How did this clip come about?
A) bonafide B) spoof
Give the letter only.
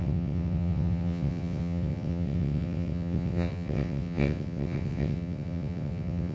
B